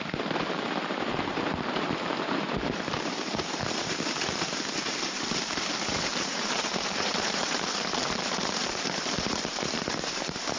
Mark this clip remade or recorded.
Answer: remade